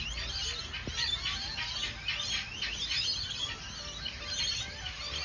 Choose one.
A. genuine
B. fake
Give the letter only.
A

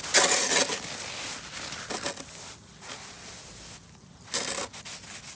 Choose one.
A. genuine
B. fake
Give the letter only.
A